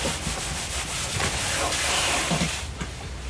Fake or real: fake